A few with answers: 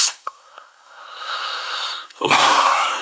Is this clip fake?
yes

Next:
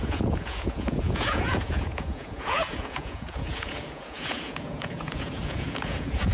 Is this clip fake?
yes